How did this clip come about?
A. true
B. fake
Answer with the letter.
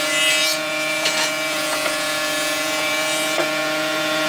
B